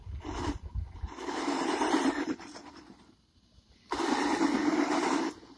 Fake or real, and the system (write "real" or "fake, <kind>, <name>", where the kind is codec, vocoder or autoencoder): fake, vocoder, BigVGAN v2